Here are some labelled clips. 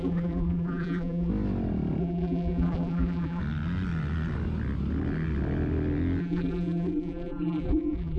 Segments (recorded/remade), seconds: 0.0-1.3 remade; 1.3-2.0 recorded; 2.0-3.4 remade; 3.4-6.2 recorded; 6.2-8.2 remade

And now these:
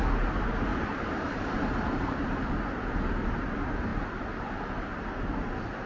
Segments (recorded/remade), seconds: 0.0-0.7 recorded; 0.7-2.5 remade; 2.5-5.9 recorded

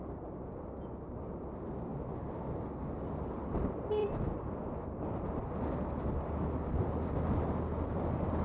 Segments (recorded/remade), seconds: 0.0-4.0 recorded; 4.0-5.0 remade; 5.0-8.4 recorded

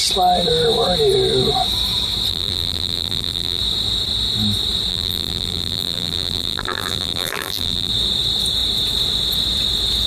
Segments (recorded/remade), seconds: 0.0-2.3 recorded; 2.3-3.6 remade; 3.6-4.9 recorded; 4.9-7.9 remade; 7.9-10.1 recorded

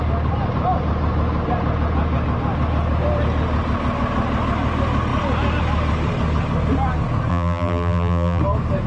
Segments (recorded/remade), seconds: 0.0-7.3 recorded; 7.3-8.4 remade; 8.4-8.9 recorded

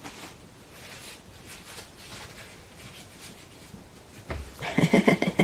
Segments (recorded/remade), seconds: 0.0-2.1 recorded; 2.1-5.4 remade